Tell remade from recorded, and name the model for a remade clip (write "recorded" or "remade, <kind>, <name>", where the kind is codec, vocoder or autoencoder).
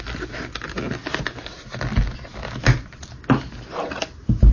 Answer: recorded